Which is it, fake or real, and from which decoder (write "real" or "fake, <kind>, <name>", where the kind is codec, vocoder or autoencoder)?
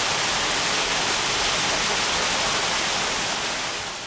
real